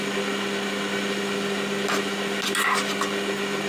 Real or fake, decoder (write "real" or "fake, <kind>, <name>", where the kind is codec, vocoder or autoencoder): real